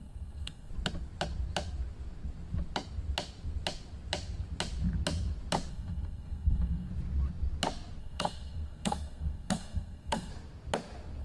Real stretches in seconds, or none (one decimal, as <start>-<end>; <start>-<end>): 0.7-5.7; 6.9-8.0; 10.3-11.2